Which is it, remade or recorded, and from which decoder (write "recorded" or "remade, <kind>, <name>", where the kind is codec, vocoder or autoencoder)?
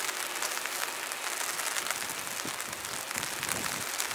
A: recorded